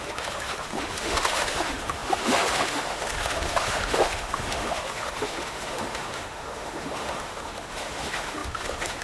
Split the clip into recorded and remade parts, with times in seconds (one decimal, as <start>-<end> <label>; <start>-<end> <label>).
0.0-9.0 remade

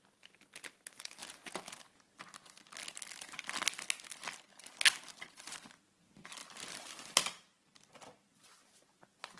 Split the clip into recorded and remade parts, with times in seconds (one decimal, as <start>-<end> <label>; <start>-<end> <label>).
0.0-9.4 recorded